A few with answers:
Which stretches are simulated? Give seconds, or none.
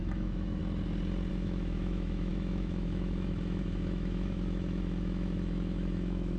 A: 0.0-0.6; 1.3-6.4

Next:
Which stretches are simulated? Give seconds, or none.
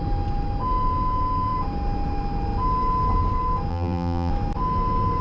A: 3.7-4.3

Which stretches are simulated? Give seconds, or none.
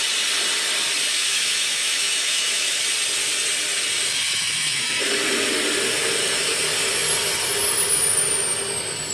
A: 1.1-2.8; 4.1-5.0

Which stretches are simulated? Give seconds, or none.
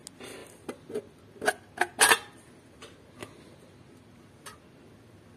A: none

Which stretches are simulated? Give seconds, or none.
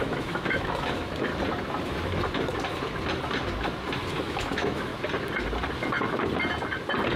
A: 0.0-1.3; 4.2-4.9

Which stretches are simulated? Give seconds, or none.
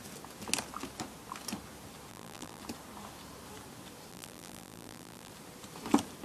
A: 2.1-2.6; 4.1-5.3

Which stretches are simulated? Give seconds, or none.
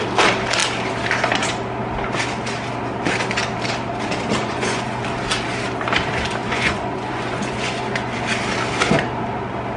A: 4.4-5.0; 6.4-8.1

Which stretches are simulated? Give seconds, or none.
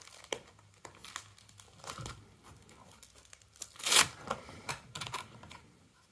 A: none